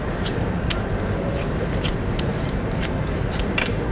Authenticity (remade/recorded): remade